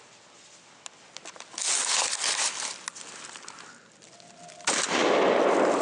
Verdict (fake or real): real